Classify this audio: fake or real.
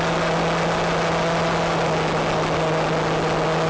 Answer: real